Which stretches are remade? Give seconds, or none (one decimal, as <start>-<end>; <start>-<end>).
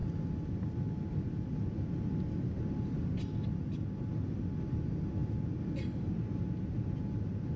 none